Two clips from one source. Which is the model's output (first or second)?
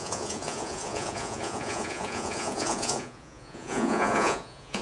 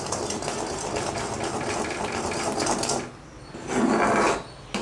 first